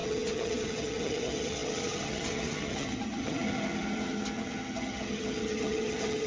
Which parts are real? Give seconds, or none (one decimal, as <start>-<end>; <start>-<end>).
none